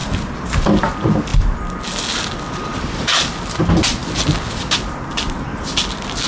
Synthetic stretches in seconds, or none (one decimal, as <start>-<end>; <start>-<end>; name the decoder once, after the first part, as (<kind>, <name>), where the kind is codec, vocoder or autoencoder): 0.0-0.6 (vocoder, BigVGAN v2)